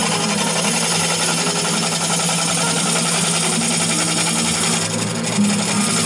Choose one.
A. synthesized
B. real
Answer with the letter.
B